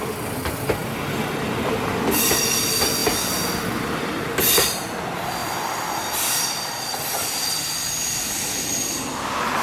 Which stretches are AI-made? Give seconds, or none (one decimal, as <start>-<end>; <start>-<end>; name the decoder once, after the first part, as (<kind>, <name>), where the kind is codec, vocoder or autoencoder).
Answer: none